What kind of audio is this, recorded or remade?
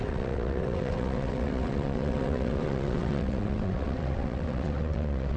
remade